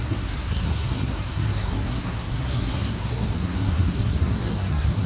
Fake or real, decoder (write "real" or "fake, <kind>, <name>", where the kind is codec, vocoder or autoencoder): fake, codec, SNAC